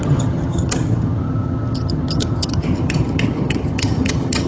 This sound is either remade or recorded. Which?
remade